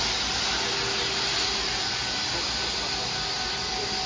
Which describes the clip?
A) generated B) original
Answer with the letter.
B